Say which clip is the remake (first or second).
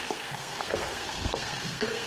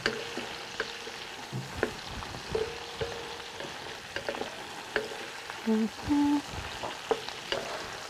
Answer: first